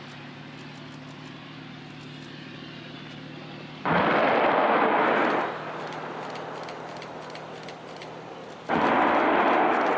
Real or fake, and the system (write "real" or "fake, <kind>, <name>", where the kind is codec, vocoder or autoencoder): real